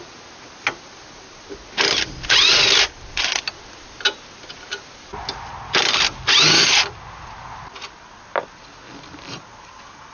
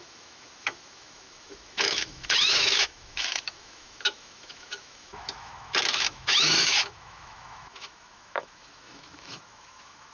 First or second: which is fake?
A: second